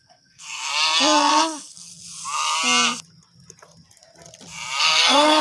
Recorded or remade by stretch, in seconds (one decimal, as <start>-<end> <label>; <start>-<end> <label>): 0.0-0.7 remade; 0.7-1.3 recorded; 1.3-1.9 remade; 1.9-4.8 recorded; 4.8-5.4 remade